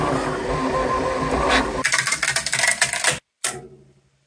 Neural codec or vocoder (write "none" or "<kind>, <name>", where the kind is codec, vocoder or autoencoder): none